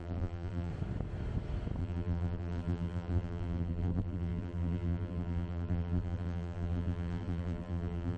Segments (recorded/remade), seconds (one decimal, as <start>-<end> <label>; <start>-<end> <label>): 0.0-0.7 remade; 0.7-1.8 recorded; 1.8-8.2 remade